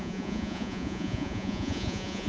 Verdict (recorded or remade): remade